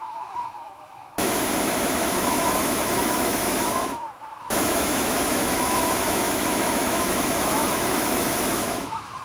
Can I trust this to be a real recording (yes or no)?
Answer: no